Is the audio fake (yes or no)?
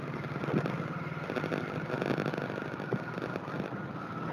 no